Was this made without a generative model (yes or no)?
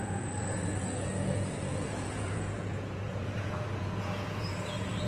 no